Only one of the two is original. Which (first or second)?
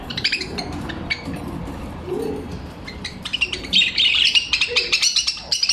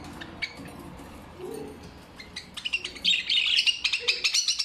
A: second